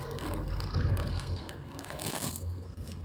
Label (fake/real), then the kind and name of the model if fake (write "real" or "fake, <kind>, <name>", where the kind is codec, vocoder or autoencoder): fake, codec, SNAC